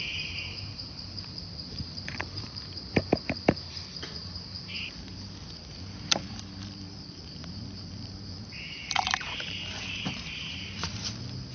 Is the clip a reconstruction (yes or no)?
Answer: yes